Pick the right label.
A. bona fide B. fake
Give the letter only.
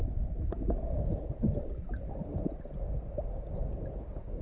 A